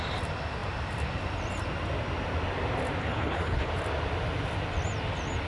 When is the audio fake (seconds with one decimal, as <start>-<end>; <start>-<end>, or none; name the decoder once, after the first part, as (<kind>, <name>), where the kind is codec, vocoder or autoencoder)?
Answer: 3.0-3.7 (codec, HILCodec)